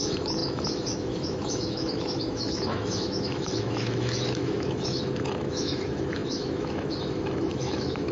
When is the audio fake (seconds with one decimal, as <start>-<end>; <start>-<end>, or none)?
0.0-8.1